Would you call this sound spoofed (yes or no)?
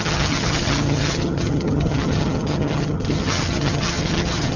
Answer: yes